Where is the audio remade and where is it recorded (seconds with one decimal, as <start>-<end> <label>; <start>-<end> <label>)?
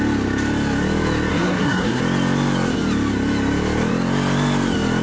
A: 0.0-1.3 recorded; 1.3-2.0 remade; 2.0-5.0 recorded